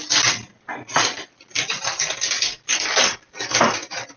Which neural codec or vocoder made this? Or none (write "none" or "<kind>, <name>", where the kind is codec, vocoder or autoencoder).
none